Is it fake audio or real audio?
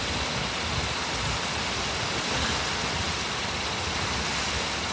real